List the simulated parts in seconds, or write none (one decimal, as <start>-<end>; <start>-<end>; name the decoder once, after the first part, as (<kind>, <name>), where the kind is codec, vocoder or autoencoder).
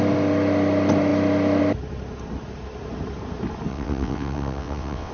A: 3.7-5.1 (vocoder, WaveNeXt)